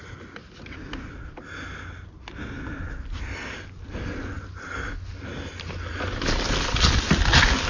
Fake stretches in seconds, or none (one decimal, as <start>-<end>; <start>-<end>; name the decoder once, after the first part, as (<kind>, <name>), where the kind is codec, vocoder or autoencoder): none